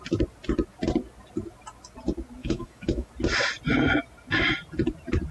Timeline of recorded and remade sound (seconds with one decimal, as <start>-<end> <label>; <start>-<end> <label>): 0.0-2.4 recorded; 2.4-3.1 remade; 3.1-5.3 recorded